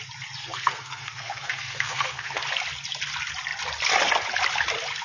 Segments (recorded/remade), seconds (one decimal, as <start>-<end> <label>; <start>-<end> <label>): 0.0-0.4 recorded; 0.4-2.4 remade; 2.4-5.0 recorded